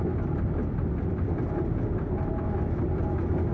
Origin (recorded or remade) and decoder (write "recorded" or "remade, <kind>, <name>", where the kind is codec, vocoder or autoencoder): recorded